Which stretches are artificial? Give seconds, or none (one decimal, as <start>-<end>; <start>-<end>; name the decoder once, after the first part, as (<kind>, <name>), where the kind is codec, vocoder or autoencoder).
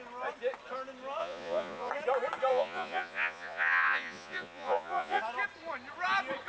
1.2-1.9 (vocoder, Vocos); 2.5-5.2